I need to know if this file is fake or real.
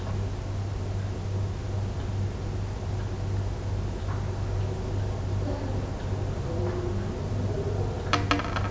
real